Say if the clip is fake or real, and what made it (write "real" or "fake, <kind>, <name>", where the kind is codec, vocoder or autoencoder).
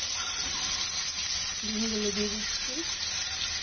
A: real